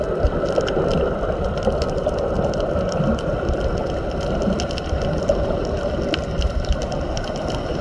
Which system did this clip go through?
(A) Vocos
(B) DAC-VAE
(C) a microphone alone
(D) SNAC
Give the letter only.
C